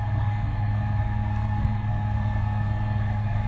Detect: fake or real fake